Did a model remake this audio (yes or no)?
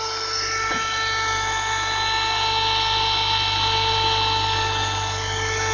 no